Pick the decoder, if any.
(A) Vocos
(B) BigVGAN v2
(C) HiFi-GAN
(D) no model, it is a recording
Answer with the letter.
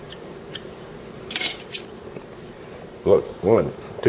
B